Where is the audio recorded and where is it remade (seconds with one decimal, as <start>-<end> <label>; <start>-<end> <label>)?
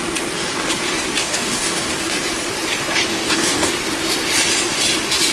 0.0-1.2 recorded; 1.2-1.9 remade; 1.9-3.1 recorded; 3.1-3.7 remade; 3.7-5.3 recorded